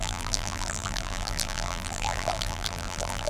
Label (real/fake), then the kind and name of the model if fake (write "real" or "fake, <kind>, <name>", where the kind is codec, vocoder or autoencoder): fake, vocoder, BigVGAN v2